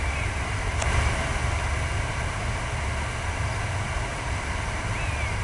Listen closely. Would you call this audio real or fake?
real